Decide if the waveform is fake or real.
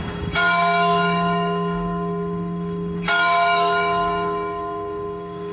fake